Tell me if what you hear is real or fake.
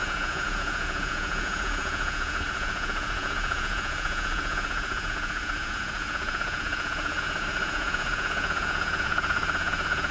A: fake